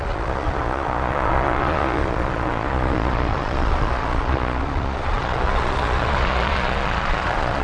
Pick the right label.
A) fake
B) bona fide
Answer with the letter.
A